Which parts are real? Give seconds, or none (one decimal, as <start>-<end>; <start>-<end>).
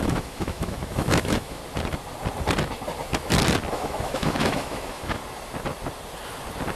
1.6-3.7; 5.2-6.8